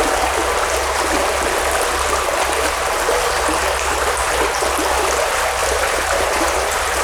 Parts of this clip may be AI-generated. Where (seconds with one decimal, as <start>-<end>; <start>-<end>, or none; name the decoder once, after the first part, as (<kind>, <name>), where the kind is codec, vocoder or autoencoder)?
5.6-6.4 (vocoder, BigVGAN v2)

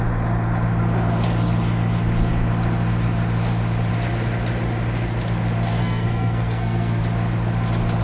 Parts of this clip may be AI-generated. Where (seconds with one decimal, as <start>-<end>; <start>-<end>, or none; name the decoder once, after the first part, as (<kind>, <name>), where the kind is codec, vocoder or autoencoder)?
5.8-7.0 (codec, SNAC)

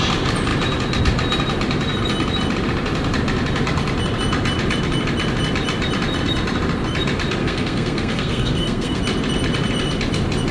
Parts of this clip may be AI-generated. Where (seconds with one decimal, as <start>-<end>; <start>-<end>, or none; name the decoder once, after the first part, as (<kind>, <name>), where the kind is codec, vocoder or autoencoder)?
7.4-9.0 (codec, SNAC)

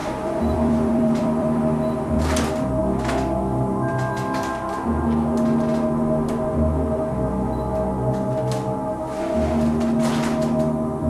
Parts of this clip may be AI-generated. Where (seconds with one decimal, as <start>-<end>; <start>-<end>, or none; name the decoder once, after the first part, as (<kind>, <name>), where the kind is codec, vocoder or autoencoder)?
0.0-2.2 (vocoder, BigVGAN v2)